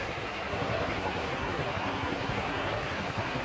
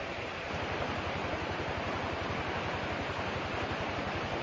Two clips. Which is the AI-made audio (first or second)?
first